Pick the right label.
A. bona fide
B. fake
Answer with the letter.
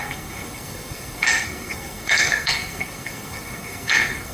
B